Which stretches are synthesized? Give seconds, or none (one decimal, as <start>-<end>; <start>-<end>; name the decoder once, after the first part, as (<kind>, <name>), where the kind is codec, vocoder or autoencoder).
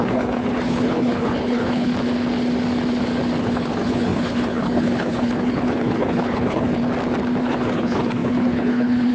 0.0-1.9 (codec, HILCodec); 3.4-6.8; 7.4-9.1